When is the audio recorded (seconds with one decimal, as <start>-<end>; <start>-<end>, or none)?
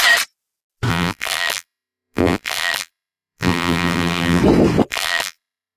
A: 0.0-0.9; 4.4-4.9